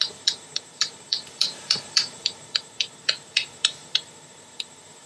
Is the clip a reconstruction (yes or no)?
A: yes